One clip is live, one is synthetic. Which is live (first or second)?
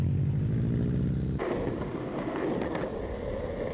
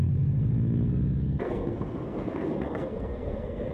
first